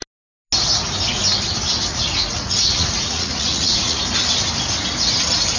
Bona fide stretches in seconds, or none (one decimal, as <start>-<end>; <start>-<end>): 0.0-1.9; 4.0-5.6

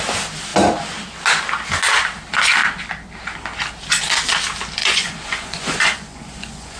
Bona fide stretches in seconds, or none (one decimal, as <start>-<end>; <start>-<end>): 0.0-4.8

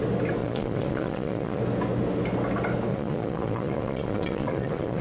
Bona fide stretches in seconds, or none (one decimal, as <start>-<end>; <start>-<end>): 0.0-0.4; 1.6-2.9

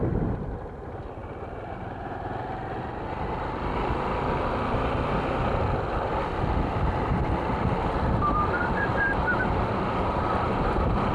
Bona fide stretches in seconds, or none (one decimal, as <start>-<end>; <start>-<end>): 0.0-8.9

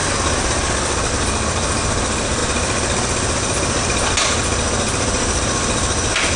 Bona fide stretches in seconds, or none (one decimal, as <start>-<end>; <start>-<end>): 0.0-6.4

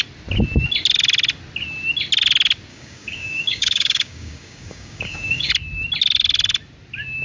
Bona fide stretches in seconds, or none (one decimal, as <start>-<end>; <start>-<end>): 0.0-2.7; 5.5-7.2

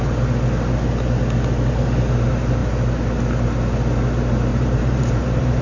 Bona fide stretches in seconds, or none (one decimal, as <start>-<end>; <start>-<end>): 0.0-4.5